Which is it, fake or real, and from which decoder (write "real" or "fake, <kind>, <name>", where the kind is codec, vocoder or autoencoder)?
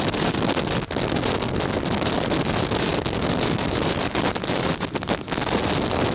real